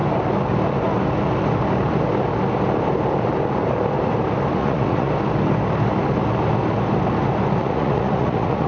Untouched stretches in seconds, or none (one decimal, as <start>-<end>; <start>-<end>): 0.0-4.6; 5.1-7.6